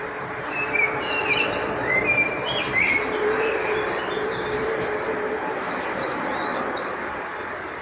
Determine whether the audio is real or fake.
fake